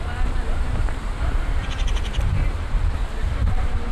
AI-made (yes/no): yes